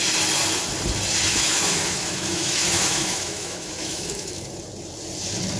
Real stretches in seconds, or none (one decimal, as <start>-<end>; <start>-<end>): 0.0-1.3; 4.6-5.6